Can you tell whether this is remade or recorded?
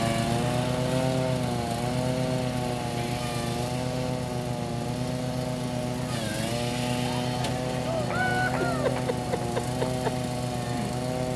recorded